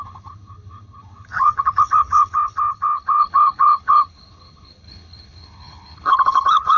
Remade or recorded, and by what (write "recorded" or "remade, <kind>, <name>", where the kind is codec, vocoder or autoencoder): remade, codec, HILCodec